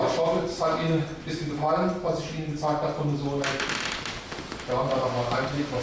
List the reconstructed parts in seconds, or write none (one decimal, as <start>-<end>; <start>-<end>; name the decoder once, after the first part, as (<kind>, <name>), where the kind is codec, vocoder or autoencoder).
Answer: none